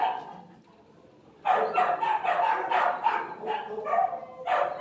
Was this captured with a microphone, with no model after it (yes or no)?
yes